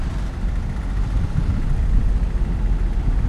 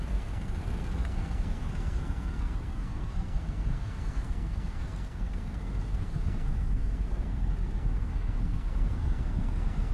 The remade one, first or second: second